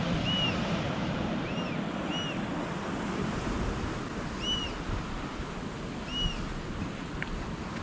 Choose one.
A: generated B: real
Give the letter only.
B